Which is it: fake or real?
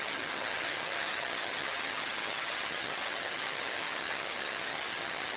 fake